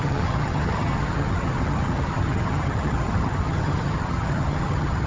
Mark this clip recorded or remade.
remade